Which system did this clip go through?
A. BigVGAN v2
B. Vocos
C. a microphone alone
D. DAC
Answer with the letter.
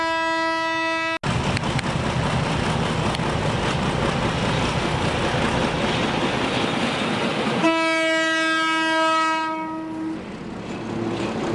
C